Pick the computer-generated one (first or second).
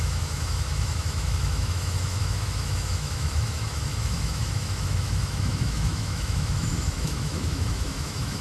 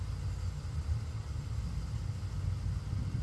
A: first